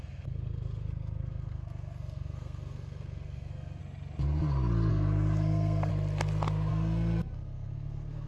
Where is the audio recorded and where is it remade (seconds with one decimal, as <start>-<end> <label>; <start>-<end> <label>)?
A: 0.0-3.8 remade; 3.8-4.9 recorded; 4.9-5.9 remade; 5.9-6.7 recorded; 6.7-8.3 remade